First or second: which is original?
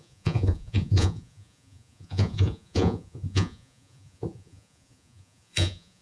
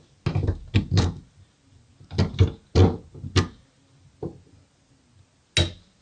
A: second